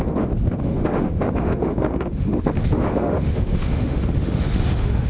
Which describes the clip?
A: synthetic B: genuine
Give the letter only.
A